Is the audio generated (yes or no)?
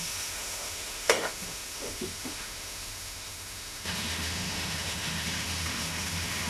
yes